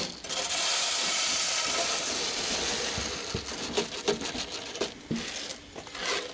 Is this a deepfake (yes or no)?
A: no